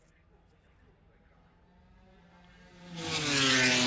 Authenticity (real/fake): real